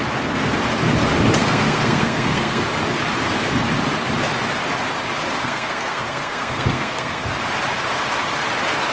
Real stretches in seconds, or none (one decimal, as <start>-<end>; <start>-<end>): 0.0-1.4; 2.6-5.4; 7.3-8.9